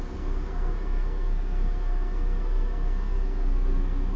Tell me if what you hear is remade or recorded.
remade